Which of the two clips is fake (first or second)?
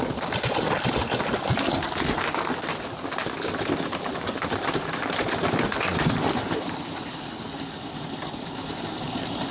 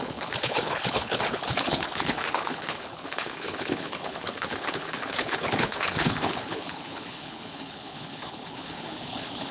second